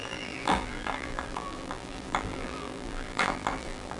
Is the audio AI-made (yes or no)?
yes